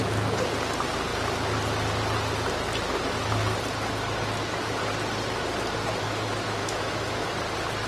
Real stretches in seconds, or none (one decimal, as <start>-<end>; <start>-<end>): 0.0-6.6; 7.3-7.9